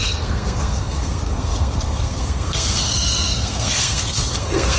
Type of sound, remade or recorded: remade